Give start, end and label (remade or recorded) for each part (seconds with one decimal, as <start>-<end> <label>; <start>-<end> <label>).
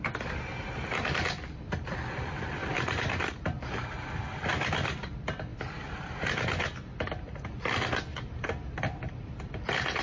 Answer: 0.0-2.6 recorded; 2.6-3.1 remade; 3.1-4.5 recorded; 4.5-5.1 remade; 5.1-5.5 recorded; 5.5-6.0 remade; 6.0-8.1 recorded; 8.1-9.1 remade; 9.1-10.0 recorded